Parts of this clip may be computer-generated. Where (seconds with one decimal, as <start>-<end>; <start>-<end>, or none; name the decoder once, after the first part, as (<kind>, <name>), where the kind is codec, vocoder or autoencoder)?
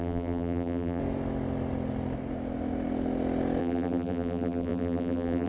0.0-1.0 (vocoder, BigVGAN v2); 3.6-5.5